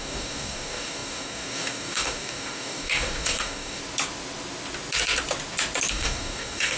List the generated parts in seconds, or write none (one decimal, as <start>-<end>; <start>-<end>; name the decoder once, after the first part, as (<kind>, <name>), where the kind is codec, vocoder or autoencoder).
0.0-3.8 (codec, DAC); 5.9-6.8